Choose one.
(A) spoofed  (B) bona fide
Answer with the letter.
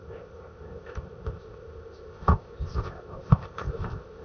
A